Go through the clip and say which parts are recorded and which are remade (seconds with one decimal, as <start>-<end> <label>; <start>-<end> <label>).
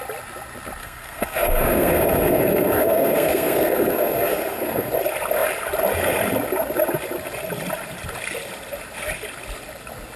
0.0-0.8 recorded; 0.8-4.9 remade; 4.9-10.2 recorded